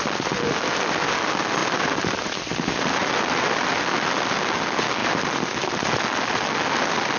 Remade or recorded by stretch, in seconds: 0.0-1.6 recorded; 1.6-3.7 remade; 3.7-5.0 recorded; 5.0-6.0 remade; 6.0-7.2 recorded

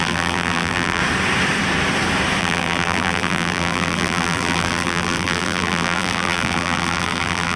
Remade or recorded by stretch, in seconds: 0.0-1.0 remade; 1.0-2.4 recorded; 2.4-7.6 remade

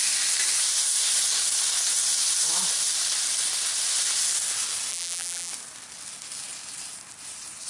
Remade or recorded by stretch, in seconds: 0.0-4.9 recorded; 4.9-5.5 remade; 5.5-7.7 recorded

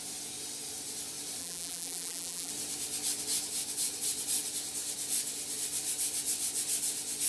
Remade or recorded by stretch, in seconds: 0.0-1.4 recorded; 1.4-2.5 remade; 2.5-7.3 recorded

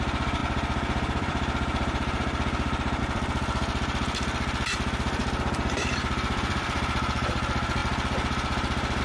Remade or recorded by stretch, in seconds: 0.0-9.0 remade

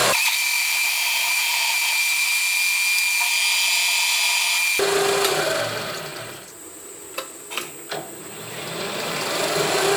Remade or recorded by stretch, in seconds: 0.0-2.4 remade; 2.4-6.1 recorded; 6.1-7.5 remade; 7.5-10.0 recorded

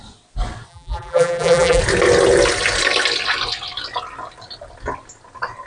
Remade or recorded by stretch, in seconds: 0.0-0.7 recorded; 0.7-1.8 remade; 1.8-5.7 recorded

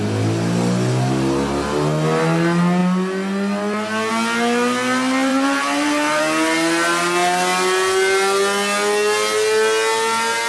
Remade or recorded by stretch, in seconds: 0.0-5.3 recorded; 5.3-6.2 remade; 6.2-10.5 recorded